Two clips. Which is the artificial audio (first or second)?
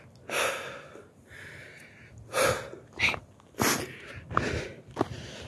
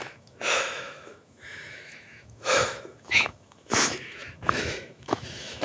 second